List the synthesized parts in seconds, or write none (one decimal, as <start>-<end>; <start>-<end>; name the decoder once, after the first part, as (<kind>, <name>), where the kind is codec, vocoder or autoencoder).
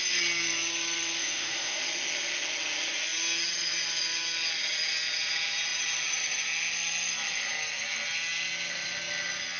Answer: 1.2-1.8 (autoencoder, DAC-VAE)